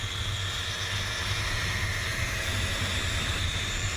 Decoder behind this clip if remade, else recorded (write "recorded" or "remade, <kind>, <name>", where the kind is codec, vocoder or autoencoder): remade, vocoder, BigVGAN v2